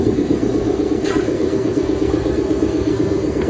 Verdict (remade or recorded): remade